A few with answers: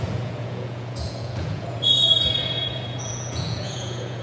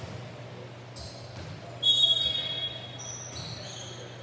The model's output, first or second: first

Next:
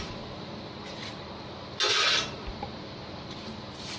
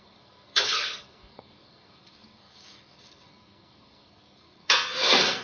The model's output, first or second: second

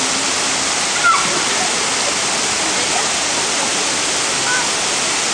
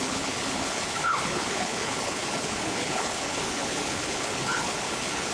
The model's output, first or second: second